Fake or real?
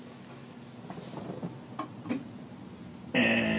real